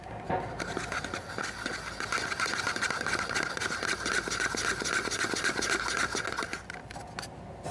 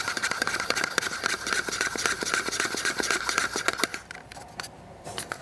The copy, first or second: second